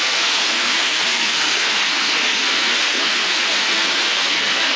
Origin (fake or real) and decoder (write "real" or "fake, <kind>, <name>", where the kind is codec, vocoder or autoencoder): fake, codec, SNAC